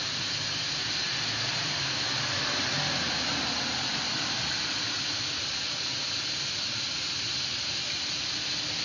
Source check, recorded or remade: recorded